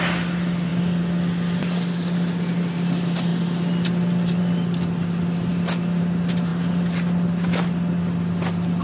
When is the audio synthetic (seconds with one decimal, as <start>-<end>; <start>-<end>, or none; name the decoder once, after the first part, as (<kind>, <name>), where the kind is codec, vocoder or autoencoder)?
none